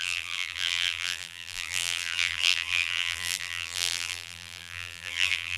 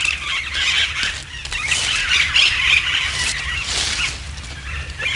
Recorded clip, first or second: second